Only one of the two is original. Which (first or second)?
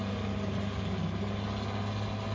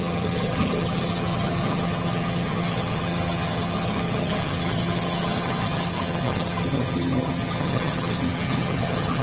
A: first